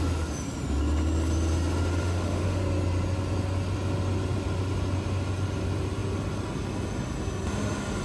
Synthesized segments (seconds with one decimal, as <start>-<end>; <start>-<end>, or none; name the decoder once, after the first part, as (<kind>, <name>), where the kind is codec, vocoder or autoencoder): 1.9-2.6 (autoencoder, DAC-VAE)